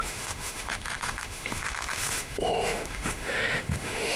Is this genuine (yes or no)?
no